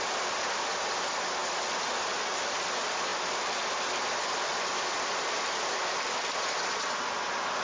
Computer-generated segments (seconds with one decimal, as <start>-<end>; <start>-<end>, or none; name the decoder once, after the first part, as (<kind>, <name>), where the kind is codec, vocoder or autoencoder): 0.0-1.4 (vocoder, BigVGAN v2); 2.2-7.6